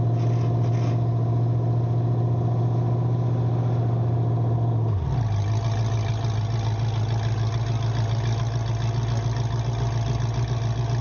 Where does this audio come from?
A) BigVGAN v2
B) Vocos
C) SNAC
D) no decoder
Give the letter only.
D